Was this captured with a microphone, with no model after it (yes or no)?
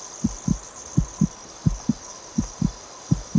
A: yes